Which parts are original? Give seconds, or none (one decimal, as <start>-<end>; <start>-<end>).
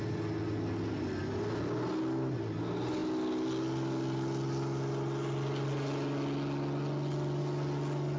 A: 0.0-8.2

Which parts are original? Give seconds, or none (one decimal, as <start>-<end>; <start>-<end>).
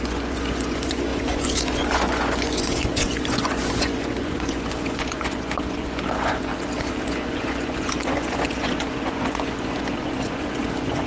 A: 6.5-7.0